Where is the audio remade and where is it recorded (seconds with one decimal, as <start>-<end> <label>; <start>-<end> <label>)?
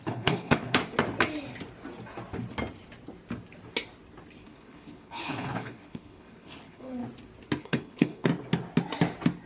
0.0-0.8 remade; 0.8-4.5 recorded; 4.5-7.0 remade; 7.0-7.6 recorded; 7.6-8.3 remade; 8.3-9.5 recorded